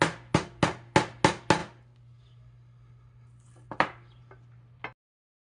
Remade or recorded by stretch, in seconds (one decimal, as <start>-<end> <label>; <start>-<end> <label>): 0.0-5.4 recorded